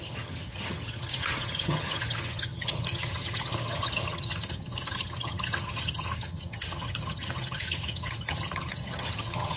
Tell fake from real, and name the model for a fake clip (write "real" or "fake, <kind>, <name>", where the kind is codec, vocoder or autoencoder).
fake, vocoder, HiFi-GAN